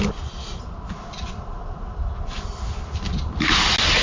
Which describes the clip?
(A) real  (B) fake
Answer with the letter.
A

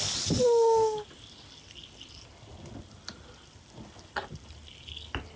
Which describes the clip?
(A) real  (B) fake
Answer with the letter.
A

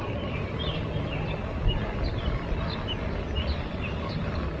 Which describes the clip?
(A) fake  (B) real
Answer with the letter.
B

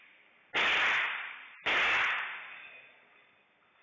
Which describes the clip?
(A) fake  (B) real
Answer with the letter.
B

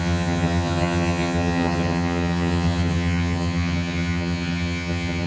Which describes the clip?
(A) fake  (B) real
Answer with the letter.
A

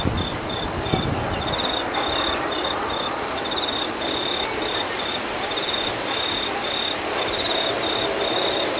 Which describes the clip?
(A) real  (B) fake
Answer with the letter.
A